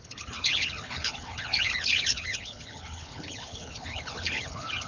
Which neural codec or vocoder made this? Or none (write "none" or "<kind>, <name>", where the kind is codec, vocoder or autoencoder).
codec, HILCodec